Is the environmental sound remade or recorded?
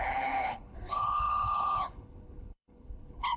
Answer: remade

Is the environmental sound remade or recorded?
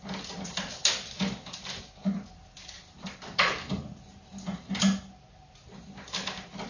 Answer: recorded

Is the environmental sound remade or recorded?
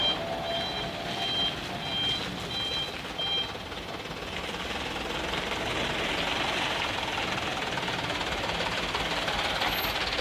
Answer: recorded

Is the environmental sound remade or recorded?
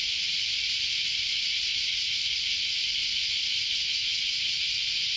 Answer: remade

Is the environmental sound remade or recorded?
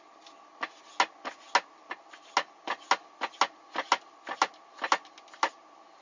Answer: recorded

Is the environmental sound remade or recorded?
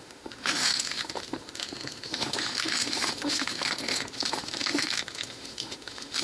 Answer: remade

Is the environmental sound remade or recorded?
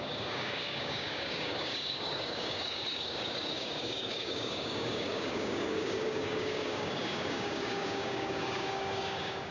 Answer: remade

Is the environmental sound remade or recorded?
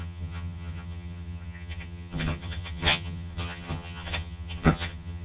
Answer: remade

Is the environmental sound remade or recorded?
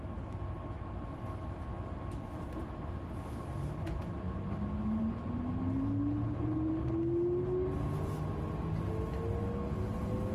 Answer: recorded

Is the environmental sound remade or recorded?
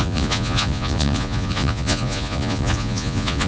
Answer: remade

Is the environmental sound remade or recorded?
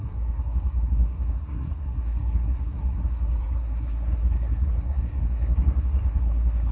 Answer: remade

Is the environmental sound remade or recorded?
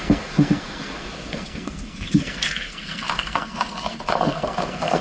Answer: remade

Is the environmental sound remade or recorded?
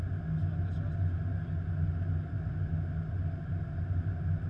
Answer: recorded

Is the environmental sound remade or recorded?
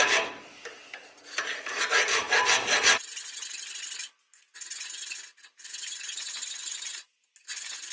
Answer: recorded